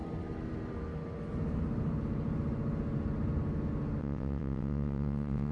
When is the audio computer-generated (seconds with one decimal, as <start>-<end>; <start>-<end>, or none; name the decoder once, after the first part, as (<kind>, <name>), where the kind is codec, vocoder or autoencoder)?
4.0-5.5 (vocoder, WaveNeXt)